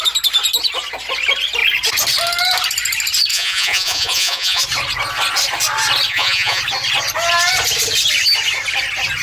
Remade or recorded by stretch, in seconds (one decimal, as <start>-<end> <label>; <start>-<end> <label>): 0.0-3.3 recorded; 3.3-4.6 remade; 4.6-6.1 recorded; 6.1-6.6 remade; 6.6-9.2 recorded